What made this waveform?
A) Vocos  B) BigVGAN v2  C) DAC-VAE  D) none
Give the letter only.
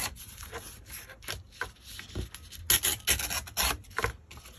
D